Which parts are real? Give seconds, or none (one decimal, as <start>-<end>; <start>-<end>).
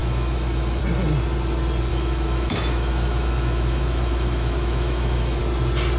0.8-1.9; 5.4-6.0